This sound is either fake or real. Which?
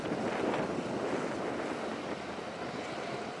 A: real